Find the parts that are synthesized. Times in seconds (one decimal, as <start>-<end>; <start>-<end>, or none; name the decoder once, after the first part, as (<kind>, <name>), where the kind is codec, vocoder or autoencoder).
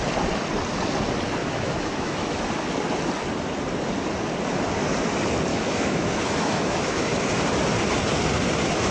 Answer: 1.4-2.4 (autoencoder, DAC-VAE); 5.5-7.1